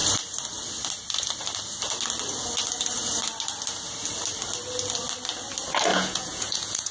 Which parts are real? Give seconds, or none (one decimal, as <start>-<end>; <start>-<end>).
0.0-5.9